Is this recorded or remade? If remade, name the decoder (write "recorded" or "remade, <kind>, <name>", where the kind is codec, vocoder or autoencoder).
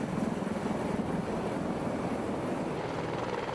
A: recorded